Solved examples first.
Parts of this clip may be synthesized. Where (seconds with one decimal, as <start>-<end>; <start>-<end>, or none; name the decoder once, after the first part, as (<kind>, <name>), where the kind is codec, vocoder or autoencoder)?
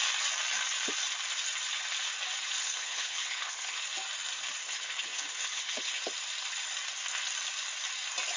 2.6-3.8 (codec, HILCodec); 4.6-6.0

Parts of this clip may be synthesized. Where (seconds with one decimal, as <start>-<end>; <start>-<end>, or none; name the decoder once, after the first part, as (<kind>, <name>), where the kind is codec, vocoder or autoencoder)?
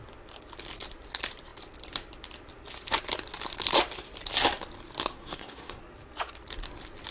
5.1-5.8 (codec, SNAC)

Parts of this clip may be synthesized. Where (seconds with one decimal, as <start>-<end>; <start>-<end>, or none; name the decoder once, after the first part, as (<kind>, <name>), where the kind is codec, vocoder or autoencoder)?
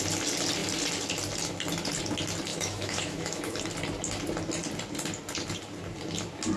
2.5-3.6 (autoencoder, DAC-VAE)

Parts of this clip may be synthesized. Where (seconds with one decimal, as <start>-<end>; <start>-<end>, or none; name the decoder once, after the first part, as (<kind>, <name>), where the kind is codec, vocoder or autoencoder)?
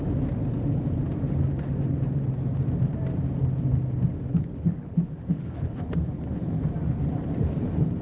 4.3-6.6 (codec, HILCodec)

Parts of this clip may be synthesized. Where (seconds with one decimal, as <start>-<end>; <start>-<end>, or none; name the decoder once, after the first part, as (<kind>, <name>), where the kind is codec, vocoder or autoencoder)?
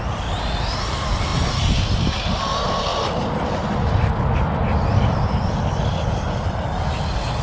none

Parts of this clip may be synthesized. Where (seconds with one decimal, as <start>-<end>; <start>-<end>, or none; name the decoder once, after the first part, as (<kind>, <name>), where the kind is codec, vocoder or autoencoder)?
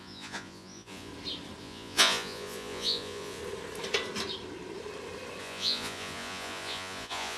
0.0-1.1 (vocoder, Vocos); 1.6-3.4; 5.4-7.4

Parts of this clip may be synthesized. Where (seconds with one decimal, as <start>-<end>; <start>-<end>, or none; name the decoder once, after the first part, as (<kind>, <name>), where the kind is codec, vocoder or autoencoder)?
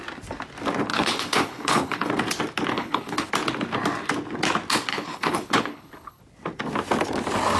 0.9-2.1 (codec, HILCodec); 2.7-3.3; 4.9-6.2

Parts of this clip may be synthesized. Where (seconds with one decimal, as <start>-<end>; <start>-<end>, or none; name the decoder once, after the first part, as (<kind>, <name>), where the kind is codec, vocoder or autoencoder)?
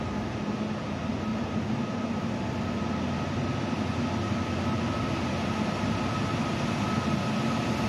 1.3-2.0 (vocoder, BigVGAN v2)